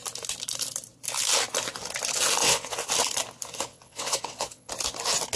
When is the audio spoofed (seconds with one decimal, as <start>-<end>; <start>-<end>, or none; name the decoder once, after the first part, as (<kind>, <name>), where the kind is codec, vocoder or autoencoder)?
2.4-2.9 (vocoder, WaveNeXt); 3.7-4.7